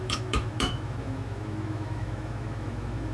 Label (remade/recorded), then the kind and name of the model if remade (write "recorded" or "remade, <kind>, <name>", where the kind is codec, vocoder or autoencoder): remade, autoencoder, DAC-VAE